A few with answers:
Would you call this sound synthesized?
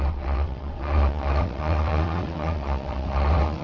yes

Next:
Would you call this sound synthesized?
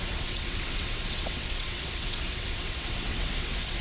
yes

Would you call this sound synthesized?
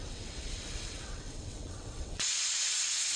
yes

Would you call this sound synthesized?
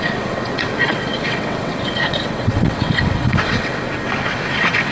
yes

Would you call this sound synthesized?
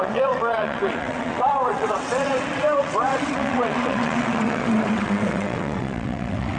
yes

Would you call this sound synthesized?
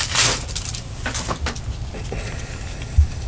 no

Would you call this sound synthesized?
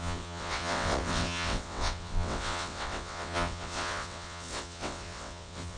yes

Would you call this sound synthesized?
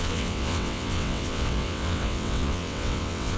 yes